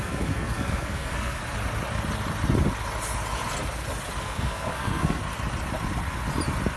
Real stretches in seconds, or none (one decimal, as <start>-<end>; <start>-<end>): 1.4-4.2; 5.2-6.8